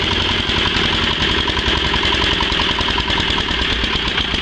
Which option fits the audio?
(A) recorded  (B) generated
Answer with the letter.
A